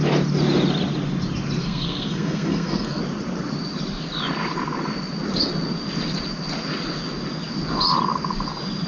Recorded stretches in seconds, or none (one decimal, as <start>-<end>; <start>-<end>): 0.0-1.6; 3.0-8.9